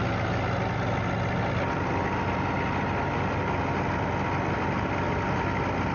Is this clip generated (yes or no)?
no